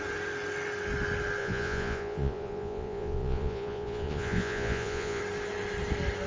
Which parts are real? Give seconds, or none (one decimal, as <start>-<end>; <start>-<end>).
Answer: 0.0-1.4; 5.2-6.3

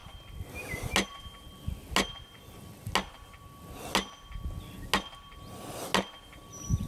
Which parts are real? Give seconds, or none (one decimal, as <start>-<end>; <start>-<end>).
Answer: 0.0-6.9